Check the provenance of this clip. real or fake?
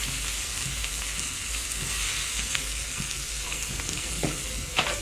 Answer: fake